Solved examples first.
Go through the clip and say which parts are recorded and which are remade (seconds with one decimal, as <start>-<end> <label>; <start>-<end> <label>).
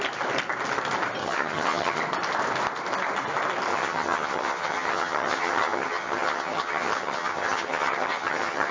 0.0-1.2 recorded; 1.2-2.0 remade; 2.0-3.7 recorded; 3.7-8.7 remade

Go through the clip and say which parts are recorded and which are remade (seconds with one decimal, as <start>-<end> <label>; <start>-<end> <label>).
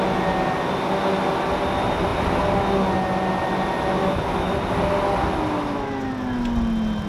0.0-4.0 recorded; 4.0-4.5 remade; 4.5-7.1 recorded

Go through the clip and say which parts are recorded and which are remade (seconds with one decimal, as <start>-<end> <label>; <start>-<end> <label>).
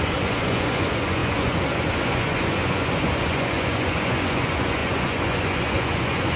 0.0-6.4 remade